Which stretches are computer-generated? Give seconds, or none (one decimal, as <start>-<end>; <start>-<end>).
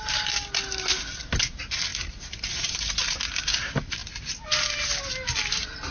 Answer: none